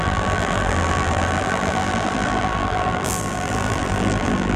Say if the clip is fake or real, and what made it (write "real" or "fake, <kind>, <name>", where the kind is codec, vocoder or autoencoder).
fake, vocoder, BigVGAN v2